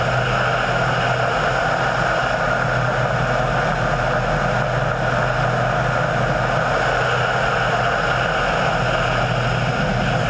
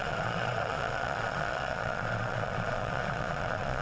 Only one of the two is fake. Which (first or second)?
second